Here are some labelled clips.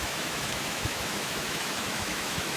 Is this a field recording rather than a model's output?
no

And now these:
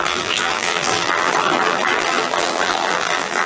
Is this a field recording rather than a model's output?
no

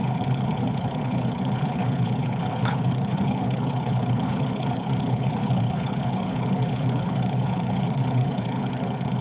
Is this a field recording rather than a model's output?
no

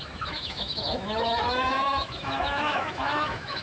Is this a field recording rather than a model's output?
no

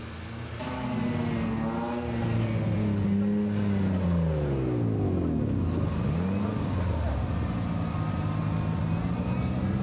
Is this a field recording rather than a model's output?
yes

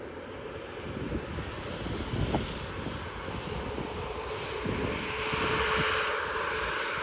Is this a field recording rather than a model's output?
yes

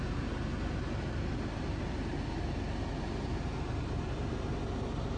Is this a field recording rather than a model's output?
yes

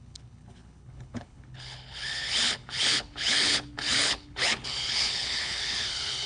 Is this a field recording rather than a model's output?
no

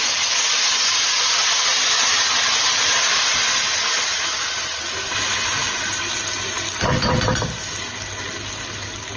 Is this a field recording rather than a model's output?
yes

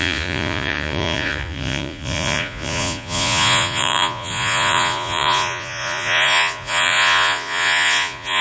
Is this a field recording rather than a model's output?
no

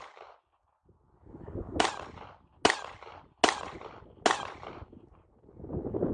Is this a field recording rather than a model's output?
yes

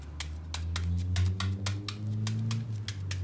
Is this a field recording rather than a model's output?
yes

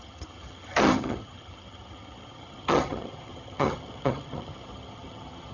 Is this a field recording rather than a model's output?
no